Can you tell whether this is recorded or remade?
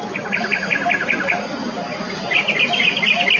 recorded